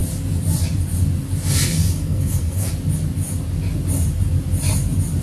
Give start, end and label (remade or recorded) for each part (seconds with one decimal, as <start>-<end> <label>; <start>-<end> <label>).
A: 0.0-1.7 recorded; 1.7-2.7 remade; 2.7-5.2 recorded